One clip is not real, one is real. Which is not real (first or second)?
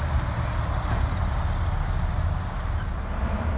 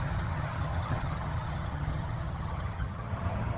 second